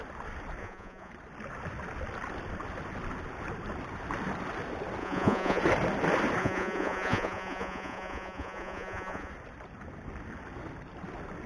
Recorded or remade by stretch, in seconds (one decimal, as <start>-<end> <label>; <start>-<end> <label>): 0.0-0.6 recorded; 0.6-1.1 remade; 1.1-5.0 recorded; 5.0-5.6 remade; 5.6-6.4 recorded; 6.4-9.3 remade; 9.3-11.5 recorded